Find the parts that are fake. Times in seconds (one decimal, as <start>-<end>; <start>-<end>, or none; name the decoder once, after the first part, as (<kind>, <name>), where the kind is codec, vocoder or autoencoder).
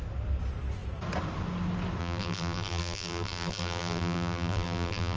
2.0-5.2 (vocoder, BigVGAN v2)